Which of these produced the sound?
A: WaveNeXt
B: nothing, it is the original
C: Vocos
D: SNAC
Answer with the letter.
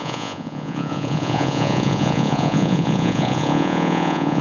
C